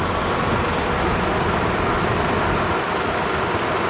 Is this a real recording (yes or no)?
yes